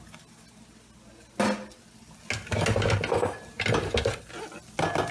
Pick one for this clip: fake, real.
real